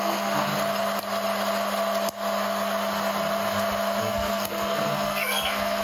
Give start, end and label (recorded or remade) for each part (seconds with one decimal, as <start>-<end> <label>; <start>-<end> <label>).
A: 0.0-0.5 remade; 0.5-4.0 recorded; 4.0-5.8 remade